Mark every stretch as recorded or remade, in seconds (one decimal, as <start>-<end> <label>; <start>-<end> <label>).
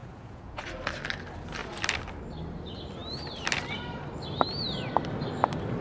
0.0-0.6 remade; 0.6-5.8 recorded